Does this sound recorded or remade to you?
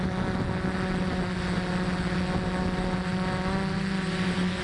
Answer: recorded